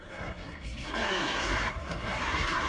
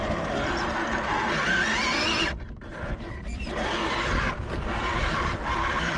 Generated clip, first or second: first